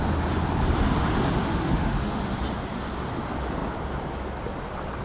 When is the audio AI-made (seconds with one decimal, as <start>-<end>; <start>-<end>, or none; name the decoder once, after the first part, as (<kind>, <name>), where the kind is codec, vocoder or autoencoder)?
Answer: 1.4-2.2 (autoencoder, DAC-VAE)